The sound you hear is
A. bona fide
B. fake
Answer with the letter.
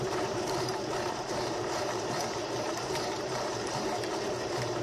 B